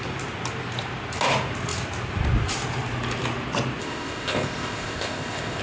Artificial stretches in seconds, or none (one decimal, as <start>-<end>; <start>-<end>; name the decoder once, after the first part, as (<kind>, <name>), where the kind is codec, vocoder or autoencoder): 3.8-5.6 (codec, ZipCodec)